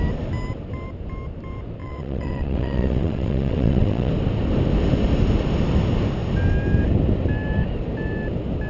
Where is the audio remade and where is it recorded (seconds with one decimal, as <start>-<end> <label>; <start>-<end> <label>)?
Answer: 0.0-1.8 recorded; 1.8-4.1 remade; 4.1-8.7 recorded